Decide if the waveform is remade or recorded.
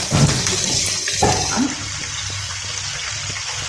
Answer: recorded